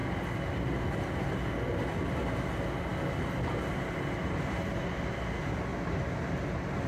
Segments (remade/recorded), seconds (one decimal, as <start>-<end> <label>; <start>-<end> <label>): 0.0-6.9 recorded